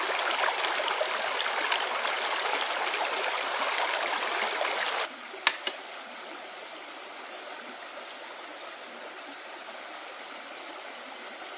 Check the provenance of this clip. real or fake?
real